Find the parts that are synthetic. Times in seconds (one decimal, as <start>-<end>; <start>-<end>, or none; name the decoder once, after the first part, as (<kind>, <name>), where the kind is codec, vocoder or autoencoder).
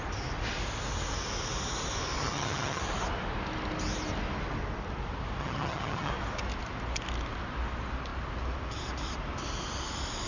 2.2-2.8 (vocoder, HiFi-GAN); 5.4-6.1